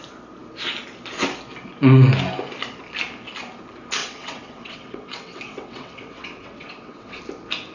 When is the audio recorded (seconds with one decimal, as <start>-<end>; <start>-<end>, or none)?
0.0-4.0; 7.2-7.7